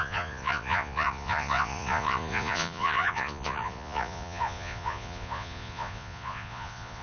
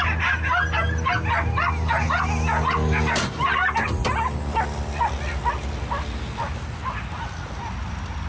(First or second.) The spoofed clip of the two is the first